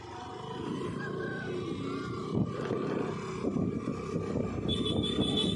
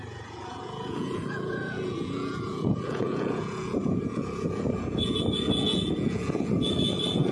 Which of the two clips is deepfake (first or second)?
second